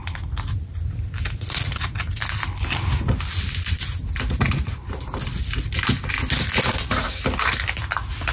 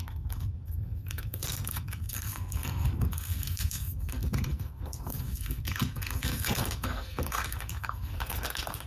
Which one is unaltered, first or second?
first